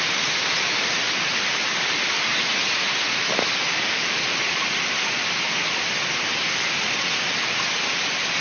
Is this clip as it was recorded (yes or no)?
yes